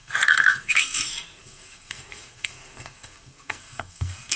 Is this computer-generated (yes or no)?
yes